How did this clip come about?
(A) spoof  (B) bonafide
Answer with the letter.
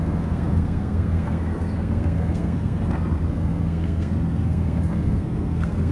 A